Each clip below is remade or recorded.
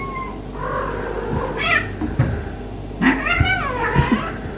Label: recorded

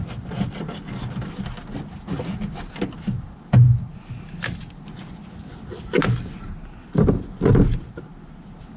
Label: recorded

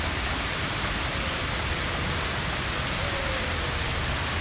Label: recorded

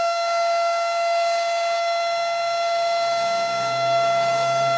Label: remade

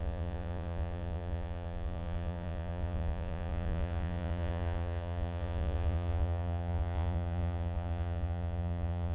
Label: remade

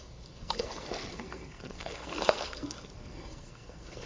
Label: remade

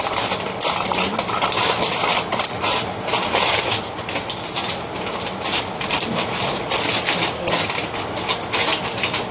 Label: recorded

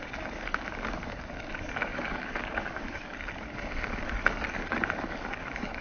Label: remade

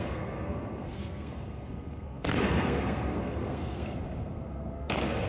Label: remade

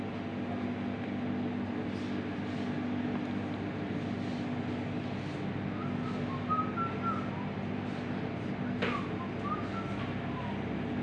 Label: recorded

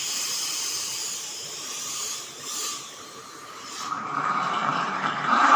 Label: remade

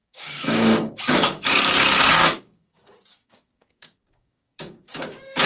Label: remade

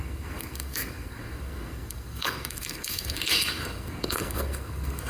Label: remade